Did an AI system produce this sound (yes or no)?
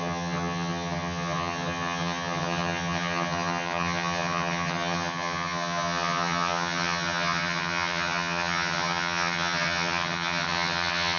yes